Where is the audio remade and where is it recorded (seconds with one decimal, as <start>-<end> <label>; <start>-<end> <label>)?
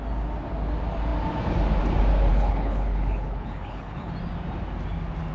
0.0-2.3 recorded; 2.3-4.1 remade; 4.1-5.3 recorded